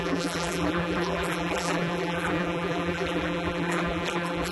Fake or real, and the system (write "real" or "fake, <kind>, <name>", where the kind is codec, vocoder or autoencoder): fake, vocoder, BigVGAN v2